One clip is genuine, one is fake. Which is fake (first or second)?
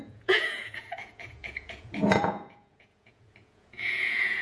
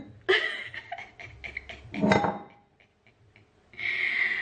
first